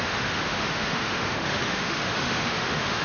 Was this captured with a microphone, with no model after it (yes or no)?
no